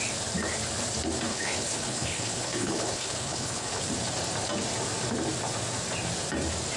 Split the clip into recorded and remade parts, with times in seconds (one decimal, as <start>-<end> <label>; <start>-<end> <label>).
0.0-1.3 recorded; 1.3-3.8 remade; 3.8-6.8 recorded